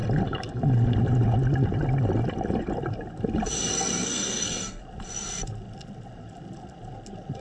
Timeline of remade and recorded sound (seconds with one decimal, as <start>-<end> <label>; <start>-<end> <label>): 0.0-3.7 recorded; 3.7-4.8 remade; 4.8-7.4 recorded